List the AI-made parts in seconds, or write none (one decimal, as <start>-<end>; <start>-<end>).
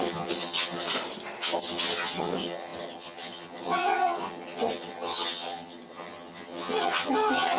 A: 0.0-0.9; 1.4-7.6